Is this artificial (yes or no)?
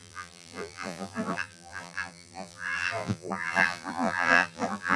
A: yes